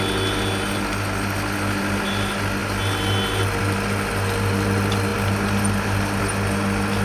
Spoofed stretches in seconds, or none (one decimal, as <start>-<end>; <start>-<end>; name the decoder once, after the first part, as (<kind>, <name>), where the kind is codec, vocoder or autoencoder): none

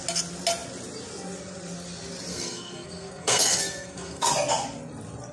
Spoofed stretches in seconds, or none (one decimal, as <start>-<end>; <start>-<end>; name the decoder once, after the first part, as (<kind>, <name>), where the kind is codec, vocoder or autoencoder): 2.3-4.3 (codec, SNAC)

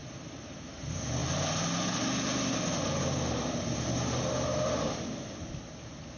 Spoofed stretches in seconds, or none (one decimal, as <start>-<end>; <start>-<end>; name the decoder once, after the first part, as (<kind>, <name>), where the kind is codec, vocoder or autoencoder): none

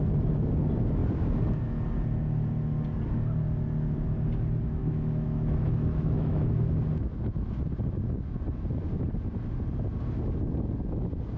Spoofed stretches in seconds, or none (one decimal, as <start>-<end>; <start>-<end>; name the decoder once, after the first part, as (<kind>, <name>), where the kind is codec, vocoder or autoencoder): 4.8-6.7 (autoencoder, DAC-VAE)

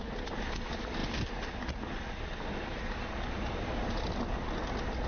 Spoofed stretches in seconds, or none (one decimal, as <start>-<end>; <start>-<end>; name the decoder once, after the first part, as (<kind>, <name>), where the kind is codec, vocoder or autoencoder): none